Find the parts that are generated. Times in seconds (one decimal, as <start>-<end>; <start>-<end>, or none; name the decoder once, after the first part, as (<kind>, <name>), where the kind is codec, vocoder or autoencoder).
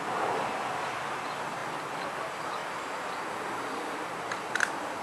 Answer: none